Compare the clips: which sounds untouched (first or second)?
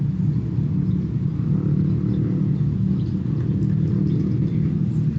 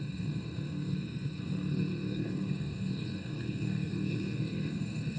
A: first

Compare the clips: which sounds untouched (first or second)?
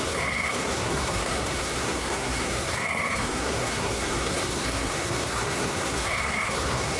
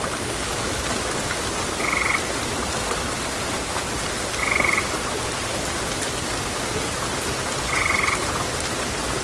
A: second